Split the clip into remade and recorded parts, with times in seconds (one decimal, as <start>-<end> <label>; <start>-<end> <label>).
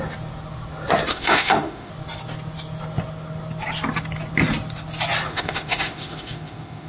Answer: 0.0-1.1 recorded; 1.1-1.9 remade; 1.9-5.3 recorded; 5.3-6.9 remade